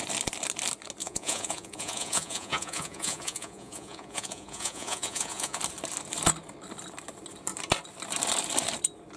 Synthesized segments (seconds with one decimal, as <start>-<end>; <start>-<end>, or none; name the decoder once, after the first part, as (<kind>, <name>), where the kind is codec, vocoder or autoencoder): 1.0-5.6 (vocoder, Vocos)